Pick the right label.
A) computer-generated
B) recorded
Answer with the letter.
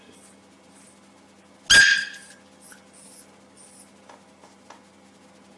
B